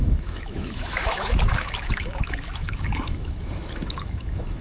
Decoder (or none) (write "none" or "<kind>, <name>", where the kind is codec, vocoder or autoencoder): autoencoder, DAC-VAE